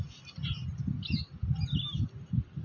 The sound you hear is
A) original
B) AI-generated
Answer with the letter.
A